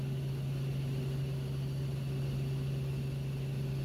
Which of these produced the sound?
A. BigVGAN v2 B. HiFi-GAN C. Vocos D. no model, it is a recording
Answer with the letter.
D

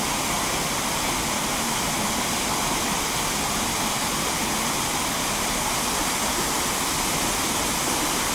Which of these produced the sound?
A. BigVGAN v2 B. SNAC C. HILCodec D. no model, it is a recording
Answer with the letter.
D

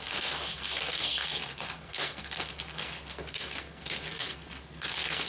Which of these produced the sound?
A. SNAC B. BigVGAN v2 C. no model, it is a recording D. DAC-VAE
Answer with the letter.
A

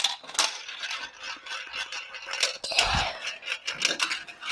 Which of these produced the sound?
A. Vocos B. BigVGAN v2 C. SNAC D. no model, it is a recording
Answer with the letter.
D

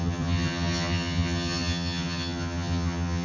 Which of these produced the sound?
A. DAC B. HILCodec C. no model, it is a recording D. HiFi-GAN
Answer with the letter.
D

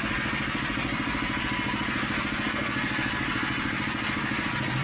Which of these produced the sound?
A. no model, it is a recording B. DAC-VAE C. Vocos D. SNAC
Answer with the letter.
A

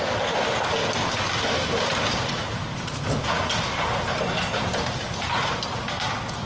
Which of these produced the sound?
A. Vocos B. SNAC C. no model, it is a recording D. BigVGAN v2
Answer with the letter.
C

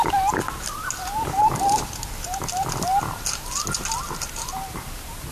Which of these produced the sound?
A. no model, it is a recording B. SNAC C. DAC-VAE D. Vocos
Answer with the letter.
A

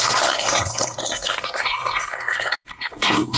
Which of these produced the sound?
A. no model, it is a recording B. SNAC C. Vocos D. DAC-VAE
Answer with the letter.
B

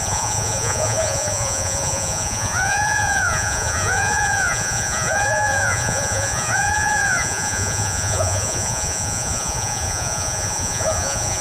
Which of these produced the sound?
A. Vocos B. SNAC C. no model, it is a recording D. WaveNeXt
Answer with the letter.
A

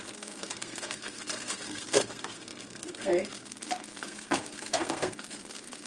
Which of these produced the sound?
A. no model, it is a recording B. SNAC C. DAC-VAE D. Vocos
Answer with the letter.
B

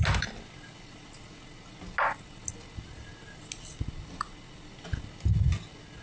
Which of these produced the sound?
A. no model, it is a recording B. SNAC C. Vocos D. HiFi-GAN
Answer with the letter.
A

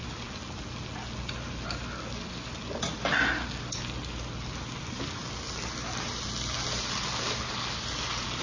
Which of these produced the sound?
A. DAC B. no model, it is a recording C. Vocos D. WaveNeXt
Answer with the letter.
B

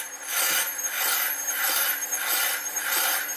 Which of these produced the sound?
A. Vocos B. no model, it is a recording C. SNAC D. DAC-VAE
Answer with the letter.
B